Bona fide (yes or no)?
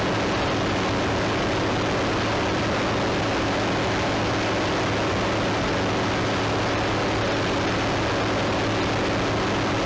yes